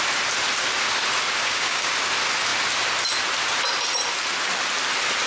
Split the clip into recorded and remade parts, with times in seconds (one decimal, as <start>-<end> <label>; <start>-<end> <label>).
0.0-1.4 recorded; 1.4-1.9 remade; 1.9-5.3 recorded